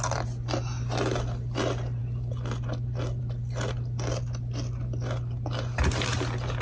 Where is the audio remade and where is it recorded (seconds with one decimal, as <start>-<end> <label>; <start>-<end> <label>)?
0.0-6.6 recorded